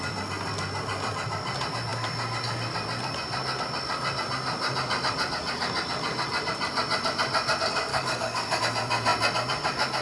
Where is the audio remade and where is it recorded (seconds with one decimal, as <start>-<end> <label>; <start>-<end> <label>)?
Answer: 0.0-7.9 recorded; 7.9-8.6 remade; 8.6-10.0 recorded